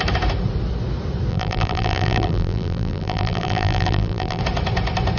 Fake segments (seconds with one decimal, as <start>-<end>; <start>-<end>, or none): 1.3-4.4